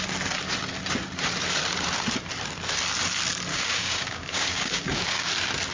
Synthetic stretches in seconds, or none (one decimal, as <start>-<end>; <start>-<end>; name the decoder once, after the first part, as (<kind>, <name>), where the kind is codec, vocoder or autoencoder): 3.5-5.3 (codec, DAC)